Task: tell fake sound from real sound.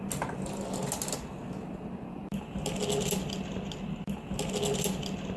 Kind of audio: real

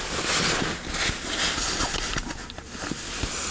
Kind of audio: real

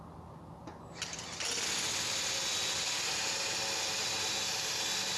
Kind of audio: real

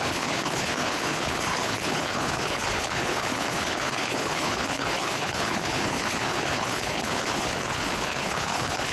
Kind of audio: fake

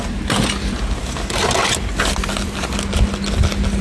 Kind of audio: real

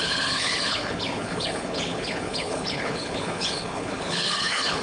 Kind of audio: fake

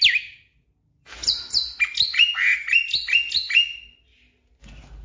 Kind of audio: real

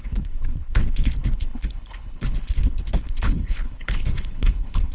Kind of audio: fake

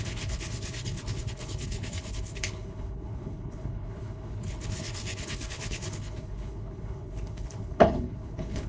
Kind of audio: fake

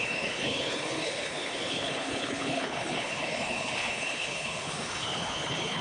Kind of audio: fake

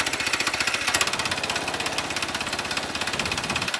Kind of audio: real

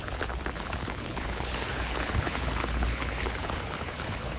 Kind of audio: fake